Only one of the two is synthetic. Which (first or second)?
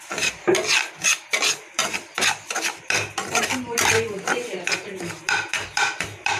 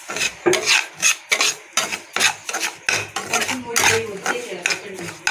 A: first